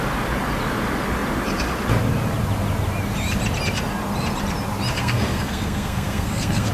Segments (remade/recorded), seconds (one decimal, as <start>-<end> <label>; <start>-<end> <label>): 0.0-5.0 recorded; 5.0-6.7 remade